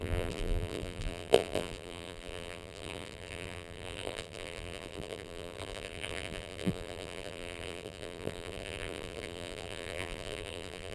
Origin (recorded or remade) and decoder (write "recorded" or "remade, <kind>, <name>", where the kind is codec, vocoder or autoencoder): remade, vocoder, BigVGAN v2